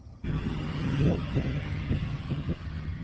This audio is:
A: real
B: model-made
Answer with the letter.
B